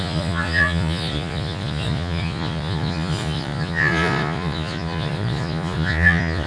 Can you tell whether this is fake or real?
fake